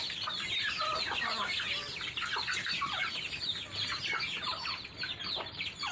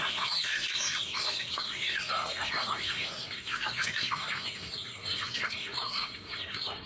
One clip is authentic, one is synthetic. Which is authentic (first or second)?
first